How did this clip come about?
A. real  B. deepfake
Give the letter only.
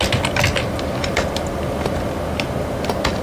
A